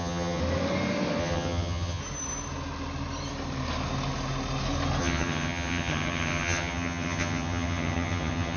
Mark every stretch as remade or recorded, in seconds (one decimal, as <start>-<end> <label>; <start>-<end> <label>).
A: 0.0-0.4 remade; 0.4-1.2 recorded; 1.2-2.0 remade; 2.0-5.0 recorded; 5.0-8.6 remade